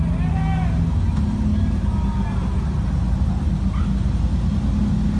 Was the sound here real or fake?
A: real